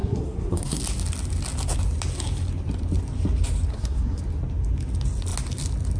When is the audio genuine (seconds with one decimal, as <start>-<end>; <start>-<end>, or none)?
0.8-3.7; 4.2-6.0